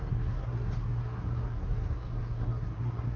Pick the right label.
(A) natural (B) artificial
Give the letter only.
B